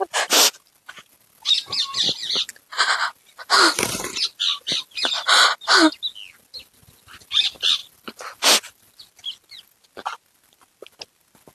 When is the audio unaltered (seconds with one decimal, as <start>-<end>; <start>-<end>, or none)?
0.0-11.5